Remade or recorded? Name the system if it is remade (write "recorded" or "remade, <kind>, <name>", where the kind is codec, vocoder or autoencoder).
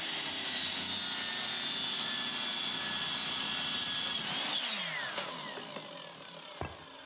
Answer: recorded